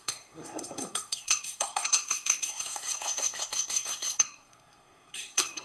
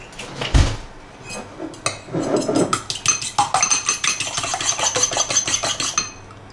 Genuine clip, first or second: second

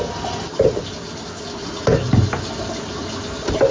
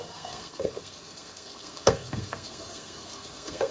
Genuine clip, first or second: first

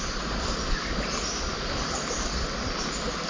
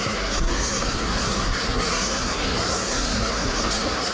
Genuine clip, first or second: first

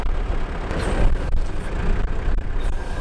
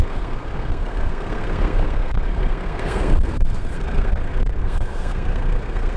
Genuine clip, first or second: first